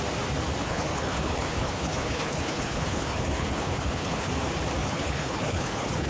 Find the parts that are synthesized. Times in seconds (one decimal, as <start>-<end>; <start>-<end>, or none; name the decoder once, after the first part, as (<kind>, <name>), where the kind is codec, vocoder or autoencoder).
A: 0.6-4.3 (codec, HILCodec); 4.8-6.1